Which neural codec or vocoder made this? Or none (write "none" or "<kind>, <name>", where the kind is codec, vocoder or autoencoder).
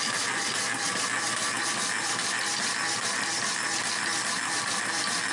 none